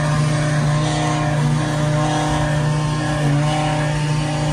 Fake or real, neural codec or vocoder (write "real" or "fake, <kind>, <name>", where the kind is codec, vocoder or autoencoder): real